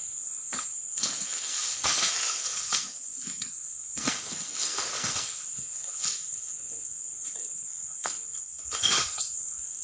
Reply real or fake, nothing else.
fake